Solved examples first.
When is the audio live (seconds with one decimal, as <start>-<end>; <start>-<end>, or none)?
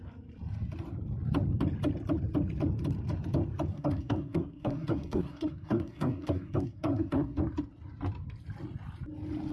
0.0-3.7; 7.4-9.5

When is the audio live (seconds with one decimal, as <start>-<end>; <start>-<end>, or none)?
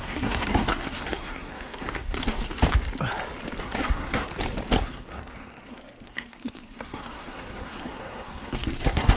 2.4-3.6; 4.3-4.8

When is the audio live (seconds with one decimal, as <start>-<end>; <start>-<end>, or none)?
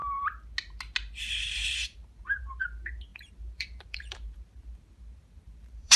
0.0-1.4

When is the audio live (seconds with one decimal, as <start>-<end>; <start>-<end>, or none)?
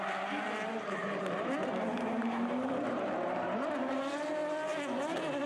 0.0-1.0; 4.3-5.5